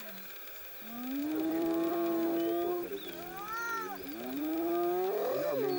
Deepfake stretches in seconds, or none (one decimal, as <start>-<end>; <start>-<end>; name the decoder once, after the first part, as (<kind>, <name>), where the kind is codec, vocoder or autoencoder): 1.2-1.9 (vocoder, BigVGAN v2); 2.8-4.4